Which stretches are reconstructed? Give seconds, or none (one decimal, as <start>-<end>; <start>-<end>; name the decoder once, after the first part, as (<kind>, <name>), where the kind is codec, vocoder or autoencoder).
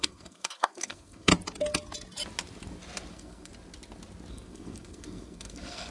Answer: 0.0-1.3 (codec, SNAC); 3.1-3.5; 4.3-5.9